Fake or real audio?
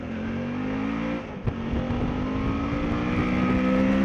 real